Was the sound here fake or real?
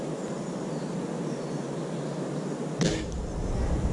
real